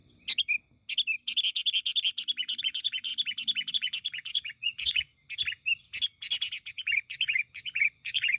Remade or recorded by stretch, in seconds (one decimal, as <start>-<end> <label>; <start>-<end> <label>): 0.0-2.6 recorded; 2.6-3.1 remade; 3.1-3.7 recorded; 3.7-5.1 remade; 5.1-6.7 recorded; 6.7-8.4 remade